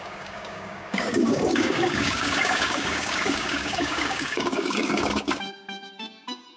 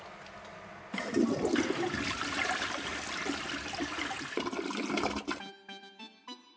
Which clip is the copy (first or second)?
first